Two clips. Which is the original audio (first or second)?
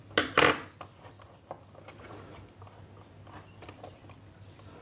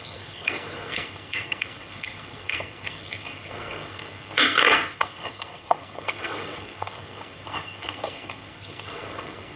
first